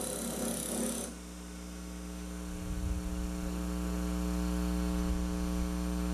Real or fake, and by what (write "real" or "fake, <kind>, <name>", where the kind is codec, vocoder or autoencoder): real